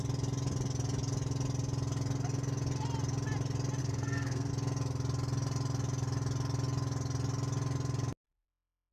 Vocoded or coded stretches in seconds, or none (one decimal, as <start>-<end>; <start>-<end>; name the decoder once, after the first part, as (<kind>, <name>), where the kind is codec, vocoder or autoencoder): 3.8-4.5 (codec, SNAC)